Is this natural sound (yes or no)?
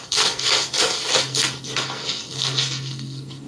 no